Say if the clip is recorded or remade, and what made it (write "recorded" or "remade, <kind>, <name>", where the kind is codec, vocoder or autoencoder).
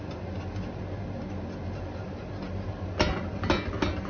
recorded